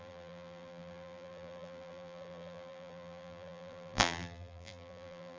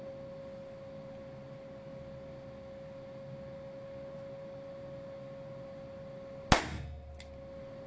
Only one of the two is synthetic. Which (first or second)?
first